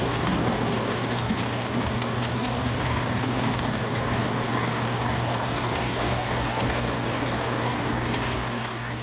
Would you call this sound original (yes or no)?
no